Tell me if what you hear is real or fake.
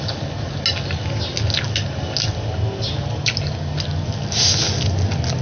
real